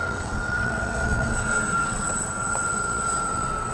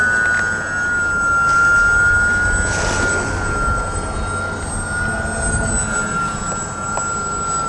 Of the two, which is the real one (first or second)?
second